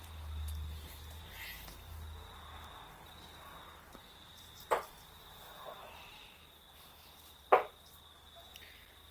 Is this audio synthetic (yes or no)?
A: no